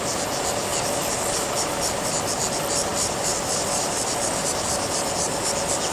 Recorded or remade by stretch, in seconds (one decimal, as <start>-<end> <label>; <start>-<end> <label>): 0.0-2.9 recorded; 2.9-4.4 remade; 4.4-5.9 recorded